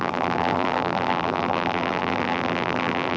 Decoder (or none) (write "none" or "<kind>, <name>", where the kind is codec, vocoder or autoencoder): vocoder, BigVGAN v2